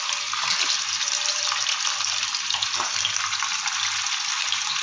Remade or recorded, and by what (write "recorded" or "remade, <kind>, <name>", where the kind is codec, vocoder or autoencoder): recorded